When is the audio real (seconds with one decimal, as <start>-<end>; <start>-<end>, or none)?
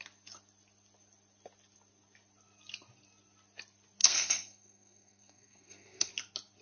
0.0-4.0; 6.1-6.6